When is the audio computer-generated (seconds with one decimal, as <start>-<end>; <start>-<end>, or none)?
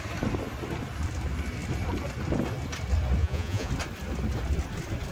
3.2-3.7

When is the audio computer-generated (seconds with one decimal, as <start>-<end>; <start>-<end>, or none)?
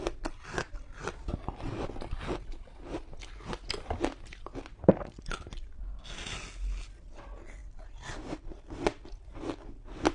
none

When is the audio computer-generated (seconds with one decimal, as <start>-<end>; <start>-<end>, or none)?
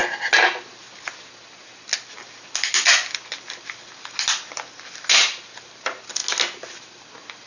none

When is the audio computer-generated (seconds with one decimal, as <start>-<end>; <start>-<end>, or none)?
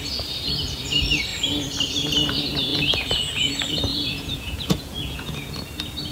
2.7-3.5; 3.9-5.6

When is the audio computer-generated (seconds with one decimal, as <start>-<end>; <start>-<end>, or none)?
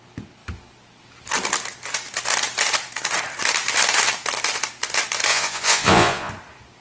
5.3-6.3